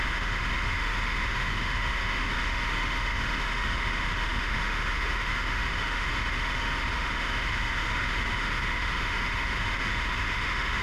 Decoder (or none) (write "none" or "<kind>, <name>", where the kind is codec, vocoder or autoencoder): autoencoder, DAC-VAE